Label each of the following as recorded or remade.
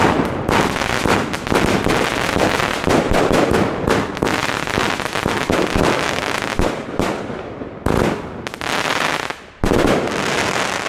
recorded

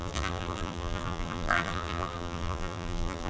remade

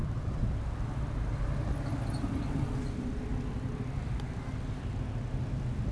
recorded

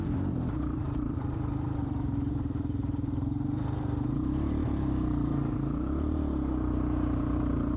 remade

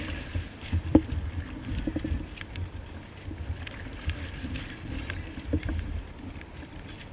recorded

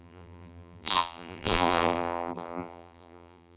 remade